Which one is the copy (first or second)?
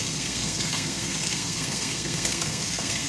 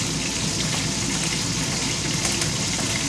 first